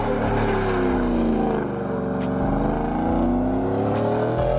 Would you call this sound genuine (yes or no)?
yes